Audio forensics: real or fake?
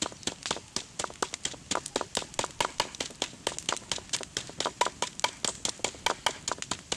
real